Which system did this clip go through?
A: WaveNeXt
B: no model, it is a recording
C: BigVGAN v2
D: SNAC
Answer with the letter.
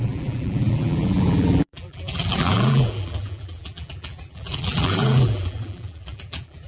C